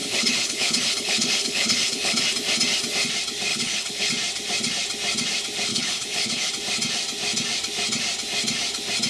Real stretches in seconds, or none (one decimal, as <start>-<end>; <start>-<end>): 2.2-3.5; 4.1-5.7; 6.5-9.1